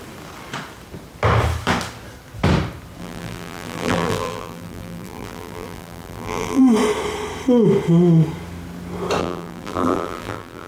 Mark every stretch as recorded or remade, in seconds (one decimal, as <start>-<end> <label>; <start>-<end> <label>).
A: 0.0-3.0 recorded; 3.0-6.6 remade; 6.6-9.2 recorded; 9.2-10.7 remade